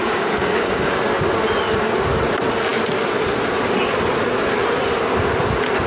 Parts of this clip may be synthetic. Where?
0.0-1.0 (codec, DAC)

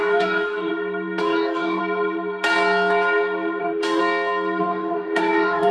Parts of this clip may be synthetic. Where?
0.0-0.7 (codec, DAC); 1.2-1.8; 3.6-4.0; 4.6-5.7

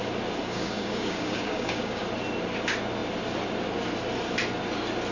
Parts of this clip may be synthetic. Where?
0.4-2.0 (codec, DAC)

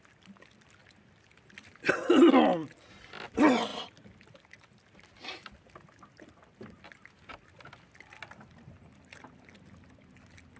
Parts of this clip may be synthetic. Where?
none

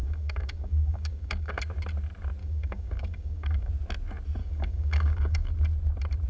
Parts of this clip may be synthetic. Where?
0.0-1.6 (codec, DAC); 2.4-3.7; 4.4-5.5

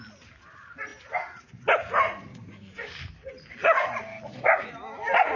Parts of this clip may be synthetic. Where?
2.3-3.3 (codec, DAC); 4.1-4.7